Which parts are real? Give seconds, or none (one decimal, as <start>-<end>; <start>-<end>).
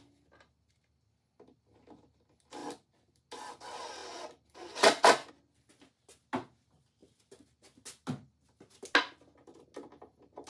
0.0-10.5